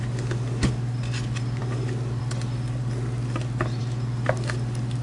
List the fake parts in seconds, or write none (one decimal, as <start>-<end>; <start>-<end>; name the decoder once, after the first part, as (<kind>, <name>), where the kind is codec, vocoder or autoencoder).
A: none